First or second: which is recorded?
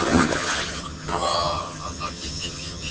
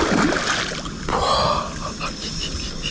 second